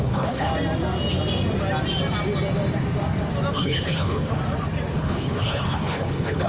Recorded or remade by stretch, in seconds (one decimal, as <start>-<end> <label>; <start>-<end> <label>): 0.0-0.5 remade; 0.5-3.5 recorded; 3.5-4.3 remade; 4.3-4.9 recorded; 4.9-6.5 remade